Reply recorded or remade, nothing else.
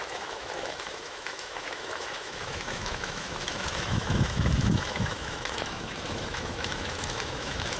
remade